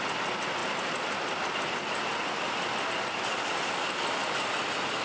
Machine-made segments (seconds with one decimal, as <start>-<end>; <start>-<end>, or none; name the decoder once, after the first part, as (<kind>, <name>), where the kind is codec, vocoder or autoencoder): none